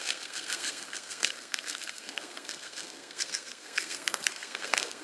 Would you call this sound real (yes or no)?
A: no